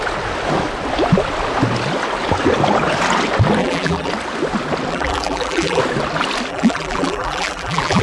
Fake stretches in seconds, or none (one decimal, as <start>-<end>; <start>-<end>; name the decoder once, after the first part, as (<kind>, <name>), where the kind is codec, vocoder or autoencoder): 3.6-4.1 (vocoder, BigVGAN v2); 4.9-5.8; 6.5-8.0